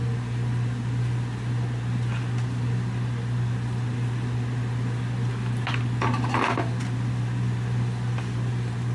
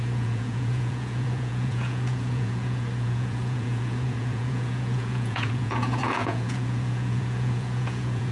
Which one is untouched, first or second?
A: first